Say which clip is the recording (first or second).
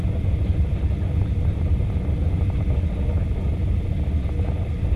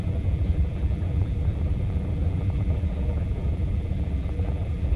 first